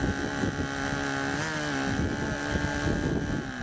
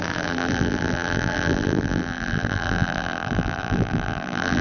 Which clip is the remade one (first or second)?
second